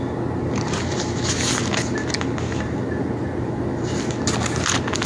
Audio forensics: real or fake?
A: real